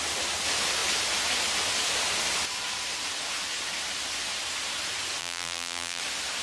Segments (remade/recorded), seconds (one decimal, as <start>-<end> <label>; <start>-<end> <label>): 0.0-5.2 recorded; 5.2-6.0 remade; 6.0-6.4 recorded